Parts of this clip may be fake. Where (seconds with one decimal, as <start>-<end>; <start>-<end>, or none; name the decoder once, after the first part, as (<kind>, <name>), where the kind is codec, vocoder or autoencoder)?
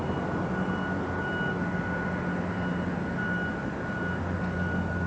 none